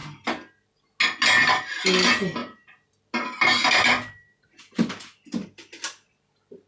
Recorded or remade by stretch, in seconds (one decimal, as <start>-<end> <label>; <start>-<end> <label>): 0.0-6.7 recorded

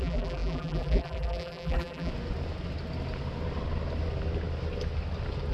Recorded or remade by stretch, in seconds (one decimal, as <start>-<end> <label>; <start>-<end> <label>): 0.0-2.1 remade; 2.1-5.5 recorded

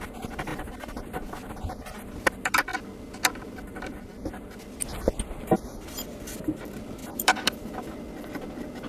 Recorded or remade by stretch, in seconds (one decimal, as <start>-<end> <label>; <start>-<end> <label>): 0.0-7.0 recorded; 7.0-7.8 remade; 7.8-8.9 recorded

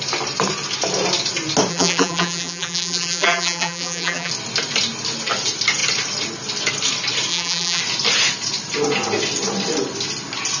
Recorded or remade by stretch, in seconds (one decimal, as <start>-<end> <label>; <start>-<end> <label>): 0.0-1.7 recorded; 1.7-4.3 remade; 4.3-7.3 recorded; 7.3-7.8 remade; 7.8-10.6 recorded

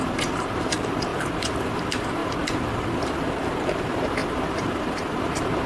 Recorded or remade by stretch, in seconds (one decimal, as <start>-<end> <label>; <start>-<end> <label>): 0.0-5.7 remade

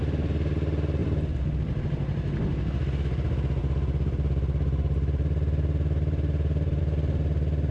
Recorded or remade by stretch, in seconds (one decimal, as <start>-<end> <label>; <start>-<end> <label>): 0.0-1.0 recorded; 1.0-1.8 remade; 1.8-3.6 recorded; 3.6-6.8 remade; 6.8-7.7 recorded

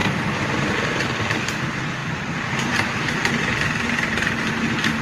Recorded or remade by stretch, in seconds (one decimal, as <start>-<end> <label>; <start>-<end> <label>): 0.0-1.2 remade; 1.2-2.0 recorded; 2.0-4.5 remade; 4.5-5.0 recorded

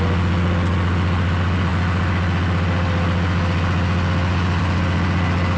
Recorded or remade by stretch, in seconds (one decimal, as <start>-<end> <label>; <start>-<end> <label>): 0.0-5.6 recorded